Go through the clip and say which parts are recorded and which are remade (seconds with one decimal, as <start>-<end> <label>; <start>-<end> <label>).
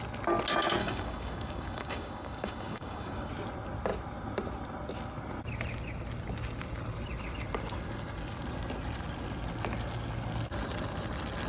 0.0-0.8 recorded; 0.8-3.3 remade; 3.3-11.5 recorded